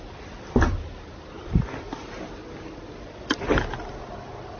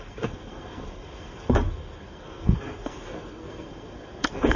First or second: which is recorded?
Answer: first